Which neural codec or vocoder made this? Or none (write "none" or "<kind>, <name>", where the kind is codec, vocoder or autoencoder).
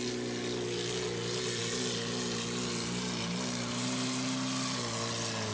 none